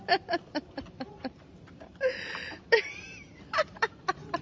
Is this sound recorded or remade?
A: remade